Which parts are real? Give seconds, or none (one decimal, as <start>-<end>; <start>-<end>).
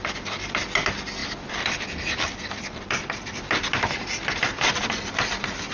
0.0-5.7